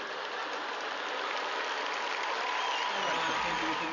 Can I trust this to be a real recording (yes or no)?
yes